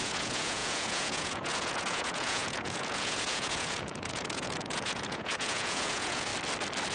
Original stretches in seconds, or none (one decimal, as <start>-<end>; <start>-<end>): 6.3-6.9

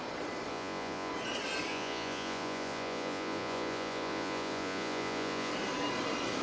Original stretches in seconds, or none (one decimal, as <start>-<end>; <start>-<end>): 0.0-0.5; 1.1-1.7; 5.5-6.4

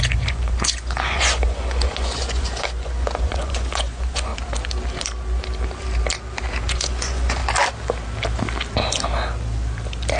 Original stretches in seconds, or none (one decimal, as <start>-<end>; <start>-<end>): 4.3-6.6; 7.4-10.2